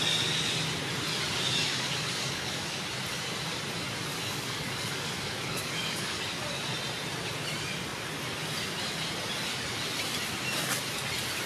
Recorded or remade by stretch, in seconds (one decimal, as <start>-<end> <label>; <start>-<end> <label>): 0.0-1.7 recorded; 1.7-2.8 remade; 2.8-4.1 recorded; 4.1-6.2 remade; 6.2-11.5 recorded